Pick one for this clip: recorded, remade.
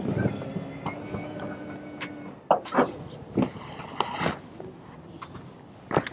recorded